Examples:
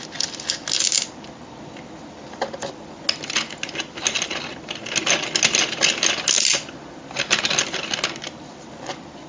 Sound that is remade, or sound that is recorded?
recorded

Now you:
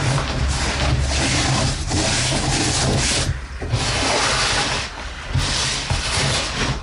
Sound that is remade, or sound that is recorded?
recorded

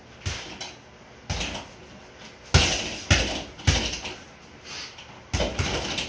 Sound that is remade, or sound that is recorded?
recorded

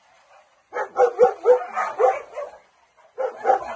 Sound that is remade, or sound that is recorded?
recorded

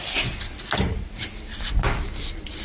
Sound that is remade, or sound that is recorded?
recorded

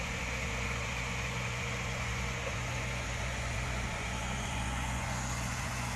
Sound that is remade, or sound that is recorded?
remade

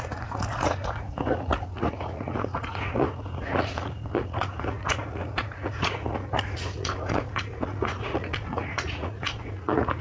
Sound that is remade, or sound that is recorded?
remade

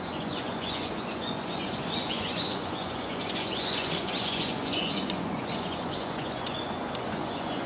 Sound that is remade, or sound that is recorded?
remade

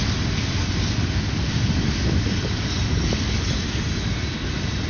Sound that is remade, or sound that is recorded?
recorded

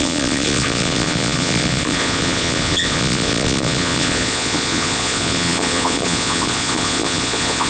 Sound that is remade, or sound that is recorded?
remade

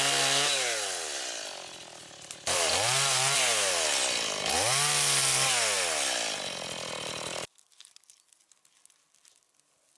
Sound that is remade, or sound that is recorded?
recorded